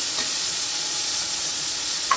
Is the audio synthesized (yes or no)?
yes